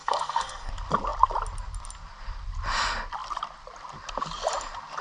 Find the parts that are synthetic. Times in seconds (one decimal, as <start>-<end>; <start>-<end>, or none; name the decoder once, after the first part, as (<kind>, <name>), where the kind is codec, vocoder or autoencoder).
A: 0.0-0.7 (codec, SNAC)